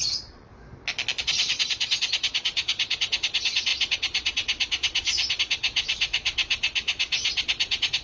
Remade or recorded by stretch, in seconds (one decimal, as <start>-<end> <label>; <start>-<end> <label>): 0.0-0.5 remade; 0.5-1.2 recorded; 1.2-8.0 remade